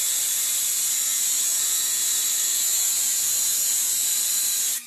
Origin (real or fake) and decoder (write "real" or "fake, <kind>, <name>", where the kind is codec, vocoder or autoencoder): fake, vocoder, BigVGAN v2